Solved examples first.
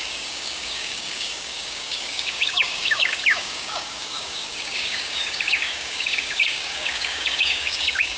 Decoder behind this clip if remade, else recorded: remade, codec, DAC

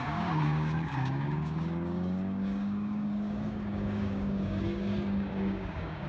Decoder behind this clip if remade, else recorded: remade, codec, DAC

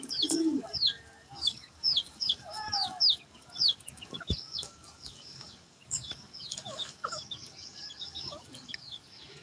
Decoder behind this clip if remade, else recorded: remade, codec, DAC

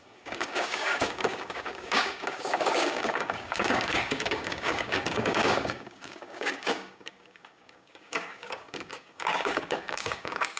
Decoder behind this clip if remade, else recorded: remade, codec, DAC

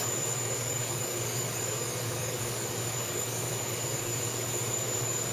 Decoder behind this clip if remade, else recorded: remade, codec, DAC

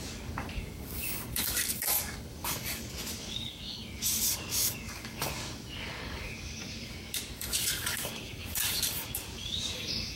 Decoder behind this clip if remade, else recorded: remade, codec, DAC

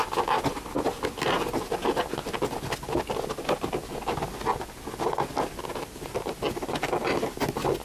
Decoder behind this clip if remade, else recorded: recorded